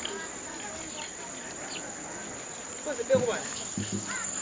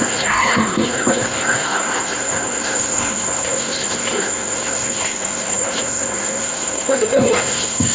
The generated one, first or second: second